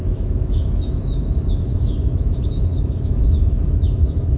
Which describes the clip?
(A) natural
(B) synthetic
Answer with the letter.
B